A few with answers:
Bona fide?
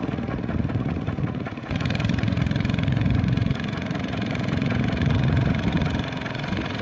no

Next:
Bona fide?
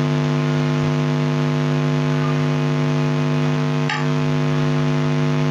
yes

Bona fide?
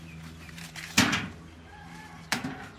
no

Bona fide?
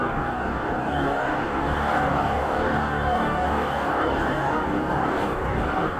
no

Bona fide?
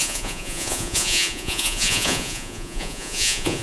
no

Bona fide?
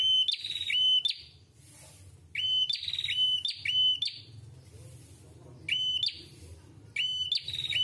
yes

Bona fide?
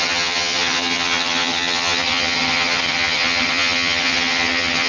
no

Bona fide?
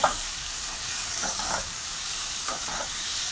no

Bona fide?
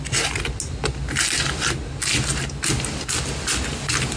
yes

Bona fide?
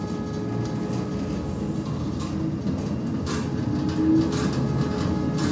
yes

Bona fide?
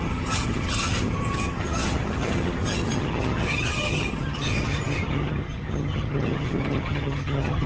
no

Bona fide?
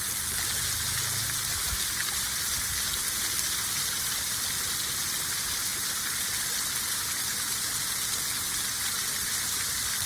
yes